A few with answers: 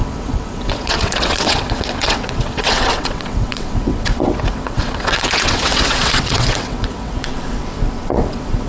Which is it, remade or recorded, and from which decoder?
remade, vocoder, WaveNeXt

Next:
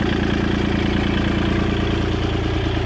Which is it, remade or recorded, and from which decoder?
recorded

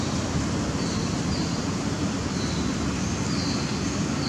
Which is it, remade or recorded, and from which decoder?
recorded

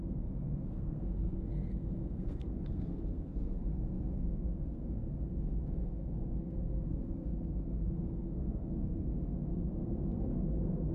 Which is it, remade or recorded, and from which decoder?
remade, codec, SNAC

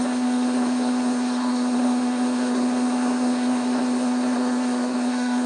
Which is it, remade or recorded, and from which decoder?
remade, codec, SNAC